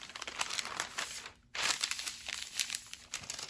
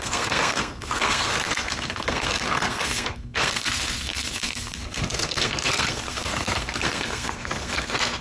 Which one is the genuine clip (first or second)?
first